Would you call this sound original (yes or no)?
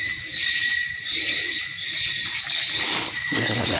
yes